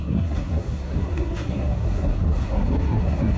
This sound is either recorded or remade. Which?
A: remade